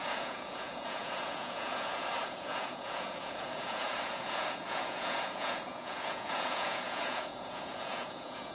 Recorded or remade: remade